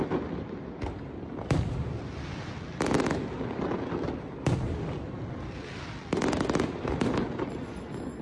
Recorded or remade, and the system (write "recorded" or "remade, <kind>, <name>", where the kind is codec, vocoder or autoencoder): recorded